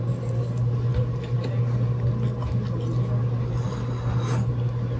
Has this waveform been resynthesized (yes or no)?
no